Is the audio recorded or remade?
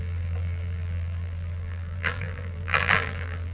remade